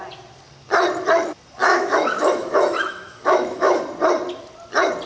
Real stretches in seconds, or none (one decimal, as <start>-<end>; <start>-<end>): 0.0-1.6; 3.8-5.1